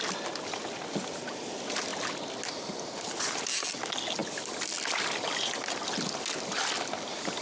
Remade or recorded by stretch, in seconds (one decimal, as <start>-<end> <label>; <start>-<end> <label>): 0.0-7.4 recorded